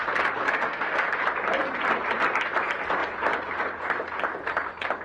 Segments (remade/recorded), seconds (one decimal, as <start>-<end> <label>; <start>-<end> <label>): 0.0-0.4 recorded; 0.4-1.1 remade; 1.1-5.0 recorded